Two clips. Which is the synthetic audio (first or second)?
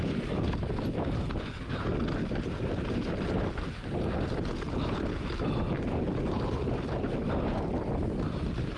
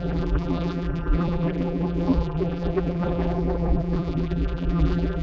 second